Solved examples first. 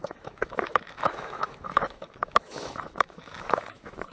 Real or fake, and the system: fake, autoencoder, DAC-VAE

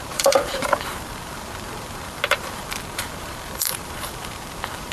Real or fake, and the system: fake, vocoder, BigVGAN v2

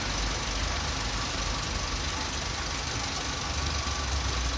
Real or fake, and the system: real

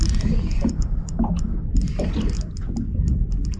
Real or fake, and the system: real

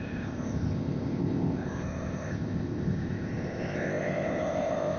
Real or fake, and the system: fake, codec, ZipCodec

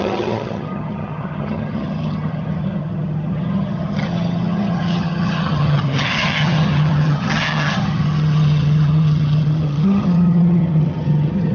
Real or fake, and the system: fake, vocoder, HiFi-GAN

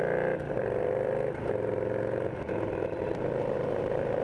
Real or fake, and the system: fake, vocoder, BigVGAN v2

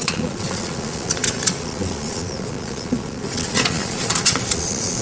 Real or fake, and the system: fake, vocoder, Vocos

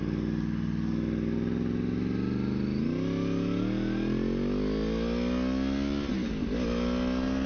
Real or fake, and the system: real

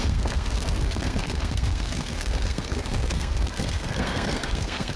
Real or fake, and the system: fake, codec, SNAC